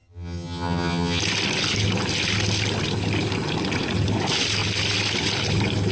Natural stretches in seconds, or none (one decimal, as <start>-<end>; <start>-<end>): 1.2-5.9